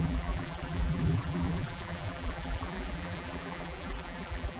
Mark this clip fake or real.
fake